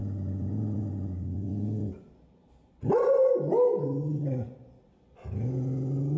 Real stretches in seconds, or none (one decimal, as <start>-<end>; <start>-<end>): 0.0-4.0; 4.6-6.2